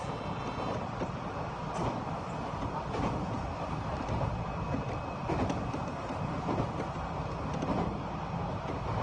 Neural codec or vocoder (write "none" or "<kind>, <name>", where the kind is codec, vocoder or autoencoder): none